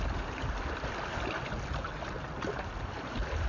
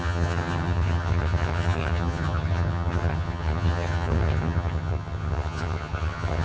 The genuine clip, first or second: first